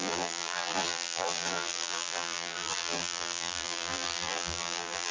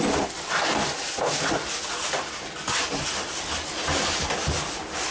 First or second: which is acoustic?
second